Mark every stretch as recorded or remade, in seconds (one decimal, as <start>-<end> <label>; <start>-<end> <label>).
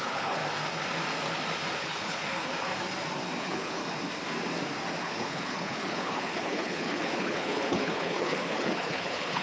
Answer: 0.0-0.4 remade; 0.4-1.8 recorded; 1.8-2.5 remade; 2.5-3.4 recorded; 3.4-3.8 remade; 3.8-5.0 recorded; 5.0-9.4 remade